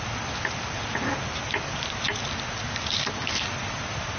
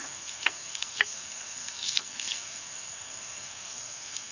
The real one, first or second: first